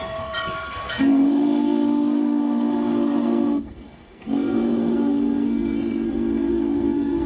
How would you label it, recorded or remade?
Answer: remade